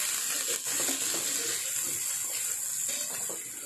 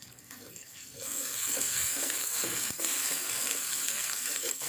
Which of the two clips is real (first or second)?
first